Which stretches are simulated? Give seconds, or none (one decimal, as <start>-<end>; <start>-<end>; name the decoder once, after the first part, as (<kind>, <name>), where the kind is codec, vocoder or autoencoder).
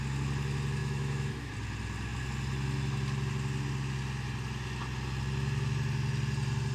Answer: 0.8-1.5 (autoencoder, DAC-VAE)